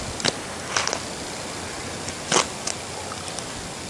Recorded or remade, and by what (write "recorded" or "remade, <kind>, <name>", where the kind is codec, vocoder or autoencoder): recorded